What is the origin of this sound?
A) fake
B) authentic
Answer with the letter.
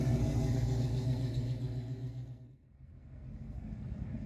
A